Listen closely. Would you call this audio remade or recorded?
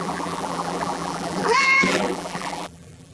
remade